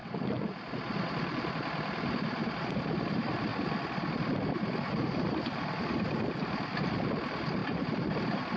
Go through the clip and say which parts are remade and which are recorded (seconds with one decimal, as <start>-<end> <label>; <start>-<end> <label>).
0.0-3.5 recorded; 3.5-6.2 remade; 6.2-7.6 recorded; 7.6-8.6 remade